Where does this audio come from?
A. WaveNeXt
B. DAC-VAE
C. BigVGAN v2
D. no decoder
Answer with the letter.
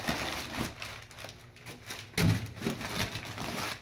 D